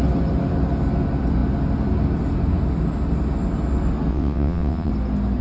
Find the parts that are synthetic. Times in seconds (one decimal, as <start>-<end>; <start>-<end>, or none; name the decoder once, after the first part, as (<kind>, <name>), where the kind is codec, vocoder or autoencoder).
4.1-4.9 (vocoder, WaveNeXt)

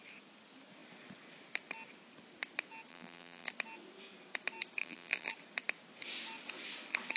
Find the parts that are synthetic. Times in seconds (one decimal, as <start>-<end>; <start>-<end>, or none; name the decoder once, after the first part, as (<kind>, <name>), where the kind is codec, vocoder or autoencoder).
2.9-3.5 (vocoder, BigVGAN v2); 4.8-5.3